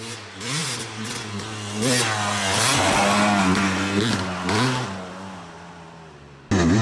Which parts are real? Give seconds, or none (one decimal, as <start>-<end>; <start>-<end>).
0.0-6.8